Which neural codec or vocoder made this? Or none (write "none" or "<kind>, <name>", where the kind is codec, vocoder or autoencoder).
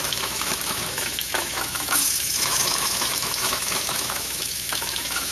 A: autoencoder, DAC-VAE